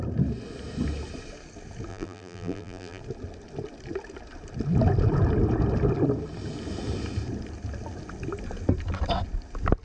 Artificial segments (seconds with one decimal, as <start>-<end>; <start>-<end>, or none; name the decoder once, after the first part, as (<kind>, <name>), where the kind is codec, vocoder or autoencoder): 1.9-3.0 (vocoder, BigVGAN v2)

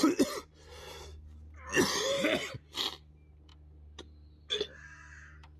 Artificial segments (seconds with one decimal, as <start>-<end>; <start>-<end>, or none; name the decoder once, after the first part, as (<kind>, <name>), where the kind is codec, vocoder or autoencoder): none